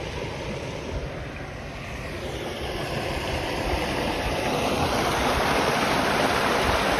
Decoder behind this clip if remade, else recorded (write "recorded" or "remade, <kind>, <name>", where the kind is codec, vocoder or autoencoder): recorded